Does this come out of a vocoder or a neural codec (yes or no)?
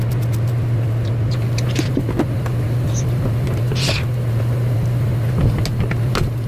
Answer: no